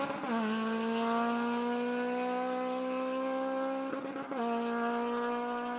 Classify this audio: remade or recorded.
recorded